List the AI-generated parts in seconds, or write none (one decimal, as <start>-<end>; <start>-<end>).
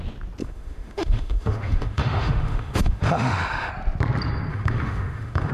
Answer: 0.4-3.7; 4.5-5.5